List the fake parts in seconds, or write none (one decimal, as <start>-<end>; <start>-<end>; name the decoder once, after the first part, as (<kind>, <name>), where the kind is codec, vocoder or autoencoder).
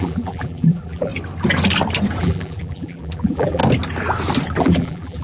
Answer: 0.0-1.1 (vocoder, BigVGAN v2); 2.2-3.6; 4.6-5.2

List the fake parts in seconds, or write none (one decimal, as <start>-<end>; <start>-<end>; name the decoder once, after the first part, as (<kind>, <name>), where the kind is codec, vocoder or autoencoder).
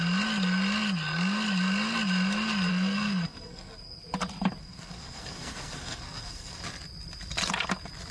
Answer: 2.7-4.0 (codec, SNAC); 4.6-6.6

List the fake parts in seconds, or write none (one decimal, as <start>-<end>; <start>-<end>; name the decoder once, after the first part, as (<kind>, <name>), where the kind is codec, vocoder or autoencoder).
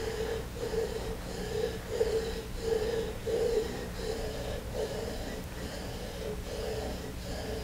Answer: 3.2-5.9 (vocoder, BigVGAN v2)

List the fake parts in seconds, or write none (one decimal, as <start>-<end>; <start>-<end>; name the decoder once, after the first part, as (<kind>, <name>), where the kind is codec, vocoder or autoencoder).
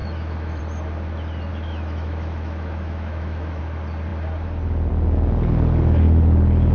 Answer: 0.0-0.6 (autoencoder, DAC-VAE); 1.5-3.6